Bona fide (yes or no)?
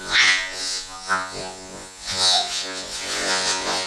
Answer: no